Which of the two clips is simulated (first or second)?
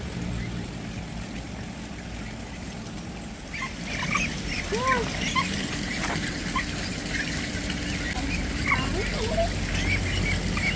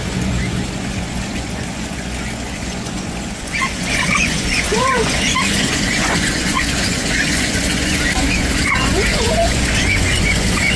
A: second